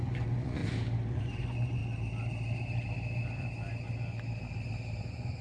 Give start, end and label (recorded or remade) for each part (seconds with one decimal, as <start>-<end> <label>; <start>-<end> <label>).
0.0-0.6 remade; 0.6-1.1 recorded; 1.1-1.8 remade; 1.8-5.0 recorded; 5.0-5.4 remade